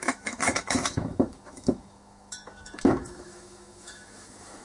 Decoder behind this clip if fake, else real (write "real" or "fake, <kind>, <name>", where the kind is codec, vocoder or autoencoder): fake, autoencoder, DAC-VAE